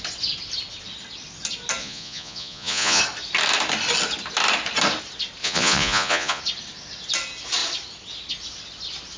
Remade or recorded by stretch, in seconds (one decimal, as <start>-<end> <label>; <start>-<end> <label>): 0.0-1.8 recorded; 1.8-3.0 remade; 3.0-5.4 recorded; 5.4-6.4 remade; 6.4-9.2 recorded

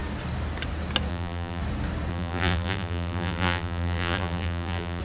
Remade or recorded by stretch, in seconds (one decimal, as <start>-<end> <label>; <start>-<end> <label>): 0.0-1.1 recorded; 1.1-1.6 remade; 1.6-2.1 recorded; 2.1-5.0 remade

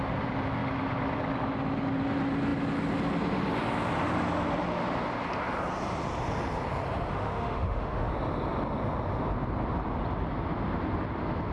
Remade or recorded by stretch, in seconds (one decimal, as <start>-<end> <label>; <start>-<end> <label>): 0.0-7.1 recorded; 7.1-8.1 remade; 8.1-11.5 recorded